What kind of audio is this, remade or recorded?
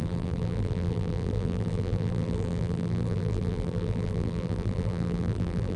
remade